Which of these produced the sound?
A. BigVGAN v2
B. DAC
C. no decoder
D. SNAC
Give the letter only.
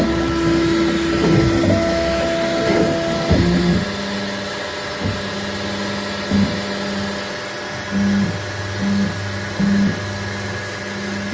C